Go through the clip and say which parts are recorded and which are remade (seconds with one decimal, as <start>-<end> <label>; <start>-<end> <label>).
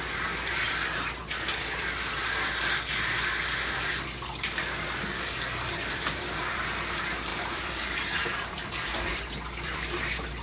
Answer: 0.0-1.2 remade; 1.2-5.9 recorded; 5.9-8.6 remade; 8.6-9.1 recorded; 9.1-10.4 remade